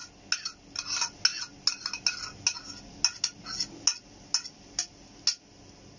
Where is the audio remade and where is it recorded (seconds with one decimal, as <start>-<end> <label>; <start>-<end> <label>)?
0.0-6.0 recorded